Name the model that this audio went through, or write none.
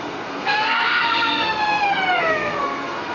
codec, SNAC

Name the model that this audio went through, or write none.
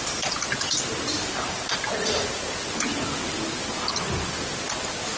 none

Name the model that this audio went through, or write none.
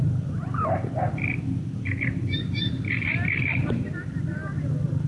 vocoder, BigVGAN v2